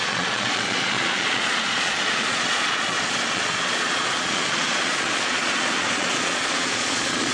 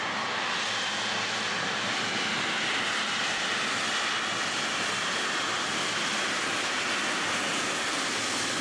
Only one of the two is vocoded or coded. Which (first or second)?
first